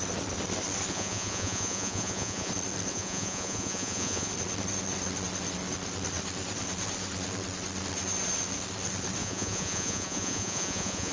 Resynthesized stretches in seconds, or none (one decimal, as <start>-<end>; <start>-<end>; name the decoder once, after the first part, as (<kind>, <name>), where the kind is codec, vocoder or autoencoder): 0.9-2.5 (vocoder, Vocos); 2.9-4.3; 9.2-11.1